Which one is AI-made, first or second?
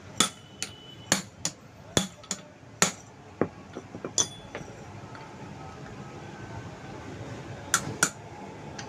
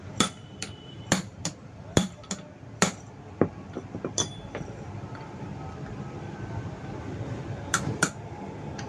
second